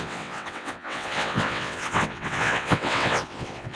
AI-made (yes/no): yes